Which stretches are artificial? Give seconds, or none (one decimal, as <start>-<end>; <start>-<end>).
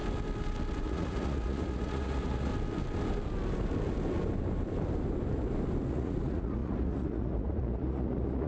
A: 0.8-2.5; 5.9-8.5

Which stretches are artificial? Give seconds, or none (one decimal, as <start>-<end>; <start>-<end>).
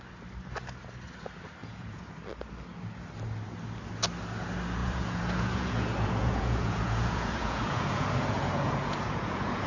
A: 1.6-2.1; 4.8-9.7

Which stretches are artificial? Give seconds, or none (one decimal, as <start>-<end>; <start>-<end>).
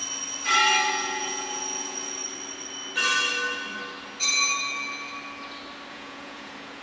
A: 0.9-2.2; 5.9-6.8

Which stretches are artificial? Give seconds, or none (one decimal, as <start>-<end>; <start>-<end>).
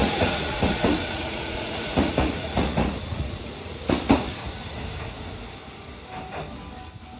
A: 0.0-4.3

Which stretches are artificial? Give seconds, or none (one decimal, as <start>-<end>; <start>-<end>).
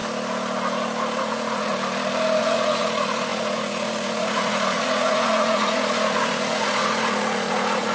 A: 1.2-1.7; 2.4-7.9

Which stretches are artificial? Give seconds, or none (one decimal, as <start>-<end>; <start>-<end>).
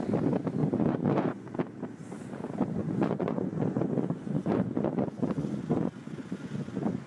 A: 0.6-1.6; 2.8-7.1